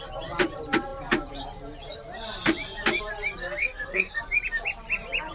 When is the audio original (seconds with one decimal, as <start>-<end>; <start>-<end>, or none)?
0.0-3.6; 4.2-5.3